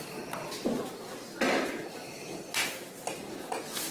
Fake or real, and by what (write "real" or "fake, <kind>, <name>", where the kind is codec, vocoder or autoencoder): real